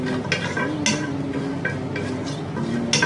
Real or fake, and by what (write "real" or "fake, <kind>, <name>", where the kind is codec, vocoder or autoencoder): real